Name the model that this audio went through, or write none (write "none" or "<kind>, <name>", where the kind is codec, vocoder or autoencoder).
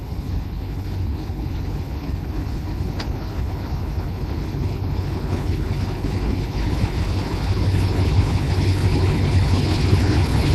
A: codec, HILCodec